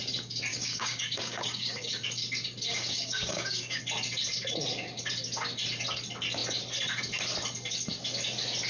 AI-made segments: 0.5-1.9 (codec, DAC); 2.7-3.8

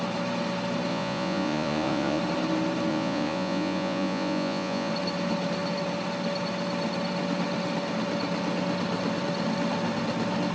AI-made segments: 0.9-2.2 (vocoder, Vocos); 2.9-4.9

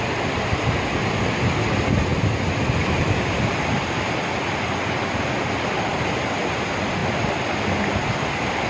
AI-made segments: none

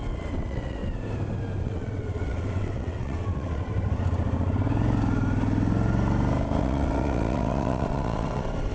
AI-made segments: 0.0-0.8 (vocoder, WaveNeXt); 1.6-3.7; 6.6-8.7

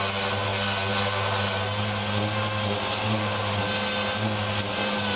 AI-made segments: none